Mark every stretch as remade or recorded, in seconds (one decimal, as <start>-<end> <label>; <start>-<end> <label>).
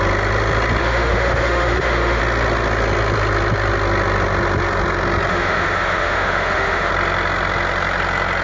0.0-0.8 recorded; 0.8-2.2 remade; 2.2-5.3 recorded; 5.3-6.9 remade; 6.9-8.4 recorded